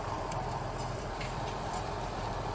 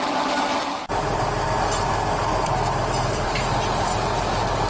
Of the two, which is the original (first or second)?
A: second